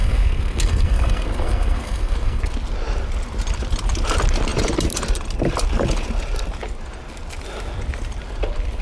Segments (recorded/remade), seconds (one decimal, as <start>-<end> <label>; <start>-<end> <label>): 0.0-2.4 remade; 2.4-8.8 recorded